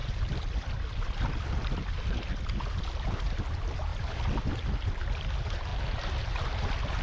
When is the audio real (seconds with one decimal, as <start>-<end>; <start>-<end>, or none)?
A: 2.8-3.9; 4.5-7.0